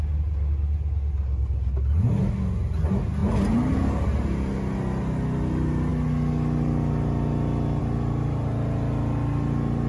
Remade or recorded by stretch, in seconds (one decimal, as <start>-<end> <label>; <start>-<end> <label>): 0.0-9.9 recorded